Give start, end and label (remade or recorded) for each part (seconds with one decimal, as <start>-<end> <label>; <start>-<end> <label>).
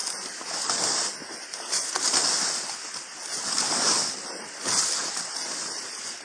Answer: 0.0-6.2 recorded